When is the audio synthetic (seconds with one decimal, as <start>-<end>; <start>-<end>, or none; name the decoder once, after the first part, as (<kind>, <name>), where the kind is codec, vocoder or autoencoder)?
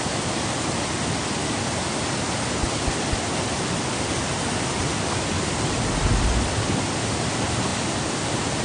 none